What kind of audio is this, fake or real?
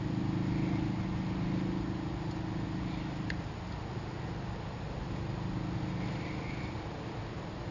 real